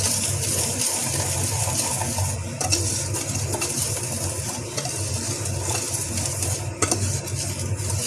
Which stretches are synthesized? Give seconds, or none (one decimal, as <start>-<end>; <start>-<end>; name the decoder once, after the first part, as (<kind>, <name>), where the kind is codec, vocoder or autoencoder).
none